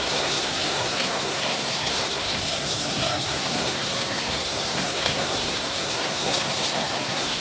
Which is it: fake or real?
fake